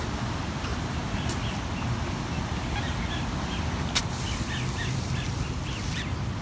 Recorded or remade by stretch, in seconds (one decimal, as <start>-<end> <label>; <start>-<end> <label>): 0.0-6.4 recorded